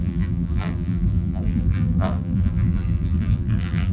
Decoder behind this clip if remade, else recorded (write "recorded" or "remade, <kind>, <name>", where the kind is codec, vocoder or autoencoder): remade, vocoder, BigVGAN v2